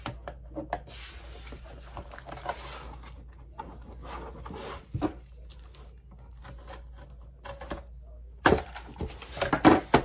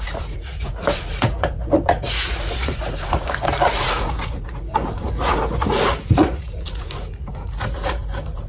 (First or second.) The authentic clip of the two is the first